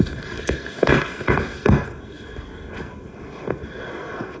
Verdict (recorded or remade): remade